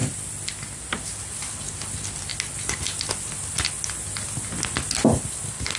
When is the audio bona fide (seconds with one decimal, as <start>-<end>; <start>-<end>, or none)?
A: 0.0-5.8